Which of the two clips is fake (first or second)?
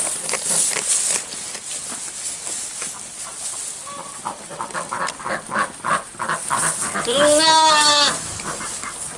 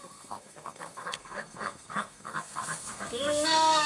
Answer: second